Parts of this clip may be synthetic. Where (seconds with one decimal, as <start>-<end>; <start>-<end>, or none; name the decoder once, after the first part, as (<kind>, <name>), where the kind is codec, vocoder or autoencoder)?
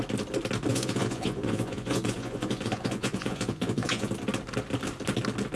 0.7-4.1 (vocoder, Vocos)